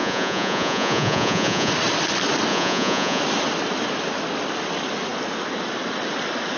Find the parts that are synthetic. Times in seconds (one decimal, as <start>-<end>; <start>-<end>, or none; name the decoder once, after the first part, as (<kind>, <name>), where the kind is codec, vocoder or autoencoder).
0.0-1.7 (vocoder, Vocos); 2.5-3.2